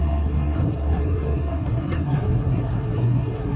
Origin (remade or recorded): remade